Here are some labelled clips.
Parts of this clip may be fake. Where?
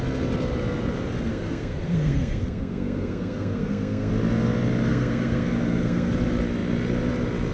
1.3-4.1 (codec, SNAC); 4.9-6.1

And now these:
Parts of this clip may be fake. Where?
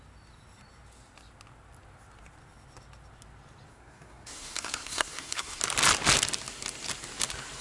3.7-5.6 (codec, SNAC)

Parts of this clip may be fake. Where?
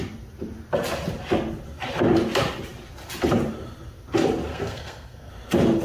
4.5-5.3 (codec, SNAC)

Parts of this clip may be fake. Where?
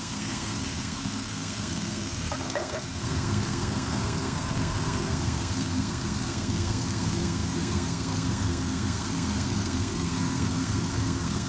0.0-11.5 (codec, SNAC)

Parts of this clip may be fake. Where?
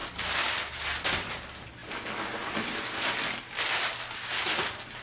none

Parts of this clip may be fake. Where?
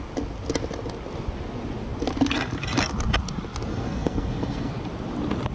3.7-4.7 (codec, SNAC)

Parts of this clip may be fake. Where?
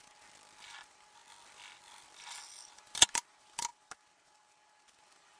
none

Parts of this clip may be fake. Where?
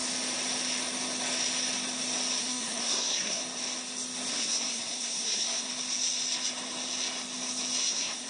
2.4-3.4 (codec, SNAC); 4.3-5.7; 7.9-8.3